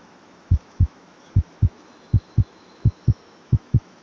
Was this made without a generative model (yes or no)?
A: no